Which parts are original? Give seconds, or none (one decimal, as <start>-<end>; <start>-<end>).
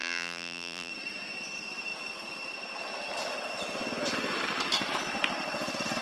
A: 0.9-6.0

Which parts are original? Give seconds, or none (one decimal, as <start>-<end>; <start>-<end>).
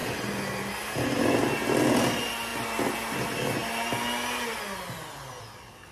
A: 0.0-5.9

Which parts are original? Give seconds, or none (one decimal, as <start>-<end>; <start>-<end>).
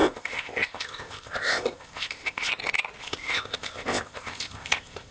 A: 2.5-3.0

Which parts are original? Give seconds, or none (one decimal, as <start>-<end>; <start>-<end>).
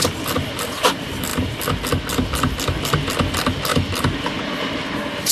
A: 0.0-5.3